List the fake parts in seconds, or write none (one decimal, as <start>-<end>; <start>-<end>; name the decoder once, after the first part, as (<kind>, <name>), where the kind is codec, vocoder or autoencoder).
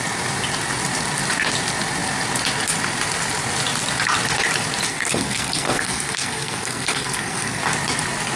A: 4.9-7.6 (codec, SNAC)